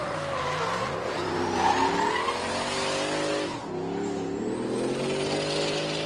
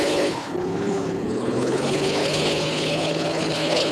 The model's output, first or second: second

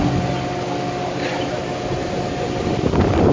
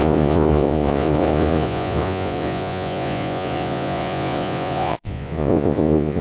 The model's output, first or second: second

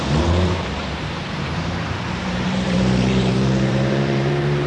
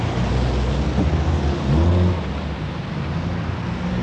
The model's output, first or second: first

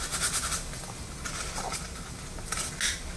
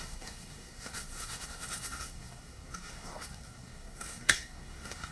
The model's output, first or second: second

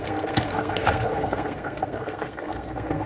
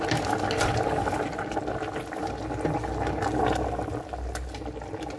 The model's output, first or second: first